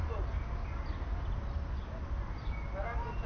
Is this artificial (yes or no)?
no